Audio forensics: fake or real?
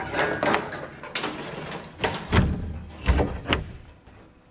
real